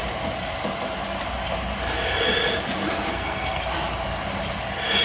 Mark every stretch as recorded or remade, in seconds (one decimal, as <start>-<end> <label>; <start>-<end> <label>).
0.0-3.1 recorded; 3.1-3.6 remade; 3.6-5.0 recorded